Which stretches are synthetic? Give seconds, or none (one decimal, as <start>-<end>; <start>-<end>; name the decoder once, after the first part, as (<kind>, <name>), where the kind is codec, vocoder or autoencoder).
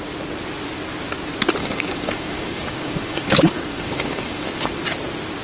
1.6-4.8 (codec, DAC)